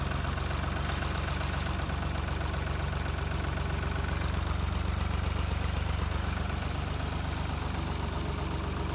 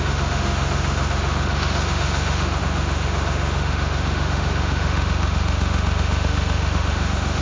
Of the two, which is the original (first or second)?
first